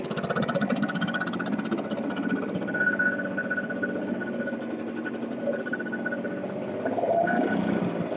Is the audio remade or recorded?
recorded